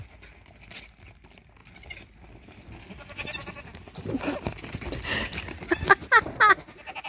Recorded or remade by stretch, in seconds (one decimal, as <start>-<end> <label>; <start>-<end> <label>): 0.0-7.1 recorded